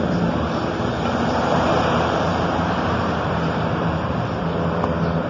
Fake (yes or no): yes